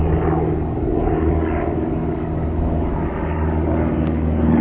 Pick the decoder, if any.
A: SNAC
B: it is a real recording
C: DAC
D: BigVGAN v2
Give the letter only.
C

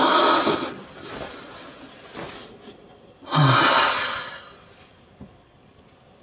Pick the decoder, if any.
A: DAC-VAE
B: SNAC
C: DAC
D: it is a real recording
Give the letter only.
D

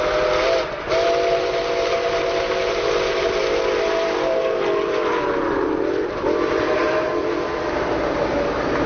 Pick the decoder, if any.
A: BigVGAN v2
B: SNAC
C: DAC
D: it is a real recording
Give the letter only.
D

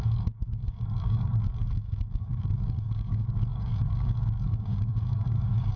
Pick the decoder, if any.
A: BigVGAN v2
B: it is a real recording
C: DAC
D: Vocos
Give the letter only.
C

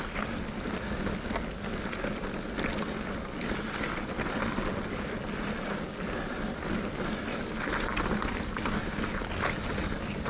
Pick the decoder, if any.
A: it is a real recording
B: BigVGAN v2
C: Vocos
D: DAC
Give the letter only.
A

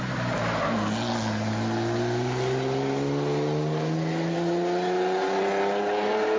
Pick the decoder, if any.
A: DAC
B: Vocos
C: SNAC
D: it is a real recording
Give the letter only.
D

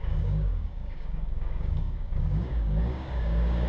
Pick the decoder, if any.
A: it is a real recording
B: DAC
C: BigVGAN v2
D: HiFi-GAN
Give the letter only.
B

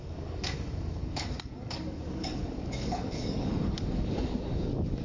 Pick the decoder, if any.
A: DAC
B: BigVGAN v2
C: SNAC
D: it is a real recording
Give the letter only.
A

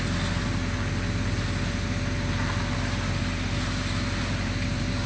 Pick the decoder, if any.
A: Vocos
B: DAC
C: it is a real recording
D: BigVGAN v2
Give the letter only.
C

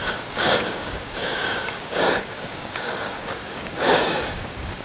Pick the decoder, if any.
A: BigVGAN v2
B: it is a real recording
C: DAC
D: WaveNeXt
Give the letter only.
C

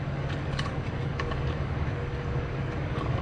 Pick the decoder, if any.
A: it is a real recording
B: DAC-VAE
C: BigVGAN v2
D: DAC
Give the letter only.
D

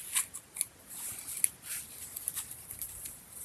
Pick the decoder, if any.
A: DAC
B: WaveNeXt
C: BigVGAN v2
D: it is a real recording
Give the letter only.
D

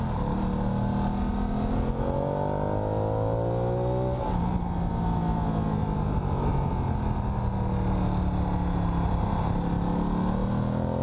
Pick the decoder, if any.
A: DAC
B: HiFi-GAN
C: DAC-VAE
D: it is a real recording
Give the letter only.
D